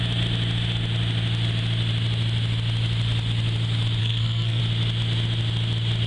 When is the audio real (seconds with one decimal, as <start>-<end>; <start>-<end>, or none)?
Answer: 0.0-4.0; 4.6-6.1